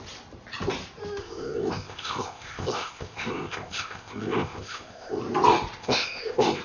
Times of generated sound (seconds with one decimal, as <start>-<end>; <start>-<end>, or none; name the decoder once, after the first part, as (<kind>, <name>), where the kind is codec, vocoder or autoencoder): 1.2-5.2 (codec, ZipCodec); 5.8-6.6